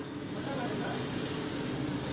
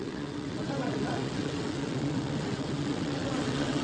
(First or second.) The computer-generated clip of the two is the second